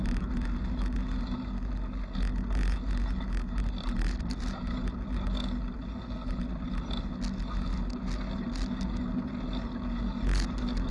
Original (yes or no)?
yes